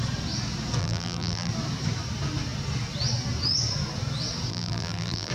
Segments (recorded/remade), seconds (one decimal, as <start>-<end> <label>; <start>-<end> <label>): 0.0-0.8 recorded; 0.8-1.5 remade; 1.5-4.5 recorded; 4.5-5.3 remade